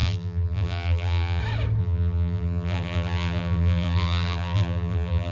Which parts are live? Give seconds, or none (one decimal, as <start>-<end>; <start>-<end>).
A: 1.4-1.8